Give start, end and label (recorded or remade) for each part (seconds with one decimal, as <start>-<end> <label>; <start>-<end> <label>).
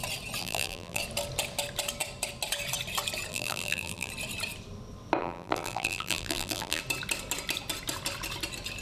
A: 0.0-0.4 recorded; 0.4-1.0 remade; 1.0-3.3 recorded; 3.3-4.1 remade; 4.1-5.2 recorded; 5.2-6.8 remade; 6.8-8.8 recorded